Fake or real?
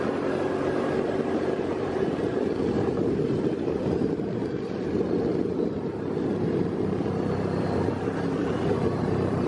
fake